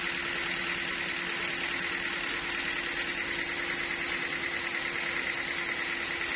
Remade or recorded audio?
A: recorded